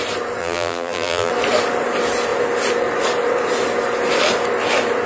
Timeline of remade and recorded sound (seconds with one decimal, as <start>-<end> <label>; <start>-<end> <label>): 0.0-0.4 recorded; 0.4-1.3 remade; 1.3-5.1 recorded

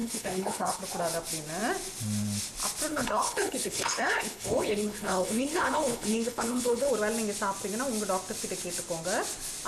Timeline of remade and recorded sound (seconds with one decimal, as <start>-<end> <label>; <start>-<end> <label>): 0.0-0.8 remade; 0.8-2.9 recorded; 2.9-6.9 remade; 6.9-9.7 recorded

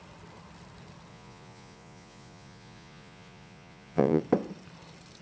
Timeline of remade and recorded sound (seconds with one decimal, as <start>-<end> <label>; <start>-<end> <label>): 0.0-1.1 recorded; 1.1-4.2 remade; 4.2-5.2 recorded

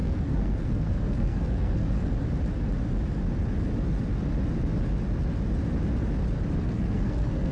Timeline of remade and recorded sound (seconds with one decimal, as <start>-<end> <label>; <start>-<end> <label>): 0.0-2.1 remade; 2.1-6.6 recorded; 6.6-7.5 remade